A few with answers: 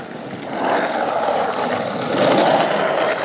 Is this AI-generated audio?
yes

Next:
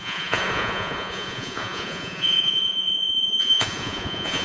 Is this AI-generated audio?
yes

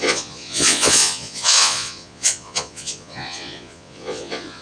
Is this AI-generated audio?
yes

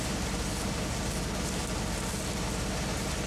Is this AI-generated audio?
no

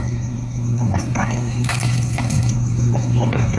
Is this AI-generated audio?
yes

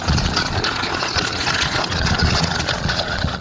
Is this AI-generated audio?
yes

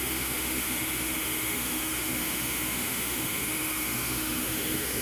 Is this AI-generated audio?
yes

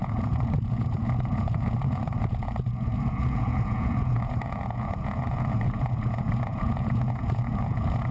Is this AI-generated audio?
yes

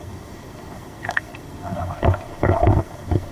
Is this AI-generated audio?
yes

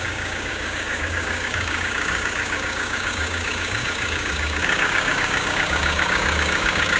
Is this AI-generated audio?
yes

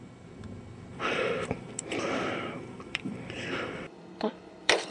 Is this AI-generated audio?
yes